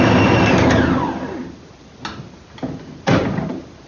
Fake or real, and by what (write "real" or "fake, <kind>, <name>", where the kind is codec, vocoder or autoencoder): real